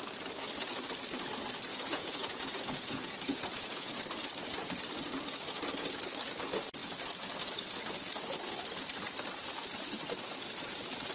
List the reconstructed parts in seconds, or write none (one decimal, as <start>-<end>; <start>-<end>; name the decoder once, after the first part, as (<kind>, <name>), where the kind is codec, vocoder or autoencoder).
1.7-4.0 (vocoder, Vocos)